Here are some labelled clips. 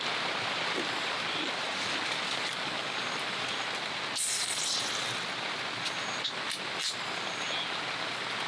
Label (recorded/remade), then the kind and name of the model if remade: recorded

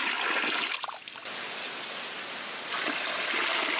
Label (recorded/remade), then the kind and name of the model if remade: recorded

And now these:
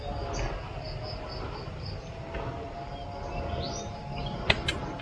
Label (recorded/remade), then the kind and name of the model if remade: recorded